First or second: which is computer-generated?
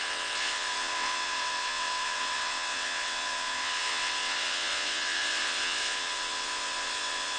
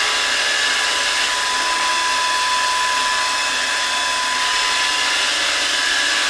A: first